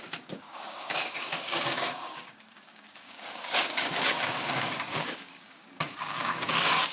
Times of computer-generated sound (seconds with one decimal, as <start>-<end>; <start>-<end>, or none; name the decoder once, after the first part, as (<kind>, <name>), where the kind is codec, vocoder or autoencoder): 0.0-6.9 (codec, DAC)